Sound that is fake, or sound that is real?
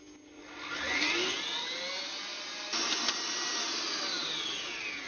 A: real